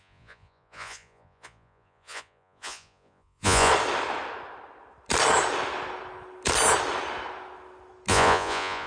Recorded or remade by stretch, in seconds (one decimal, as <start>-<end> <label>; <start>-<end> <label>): 0.0-3.7 remade; 3.7-8.1 recorded; 8.1-8.9 remade